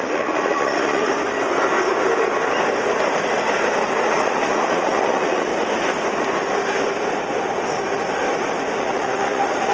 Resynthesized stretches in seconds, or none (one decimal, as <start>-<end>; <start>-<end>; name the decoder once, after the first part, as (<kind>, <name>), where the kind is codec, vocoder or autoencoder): 0.0-1.1 (vocoder, Vocos); 4.1-5.5; 8.8-9.7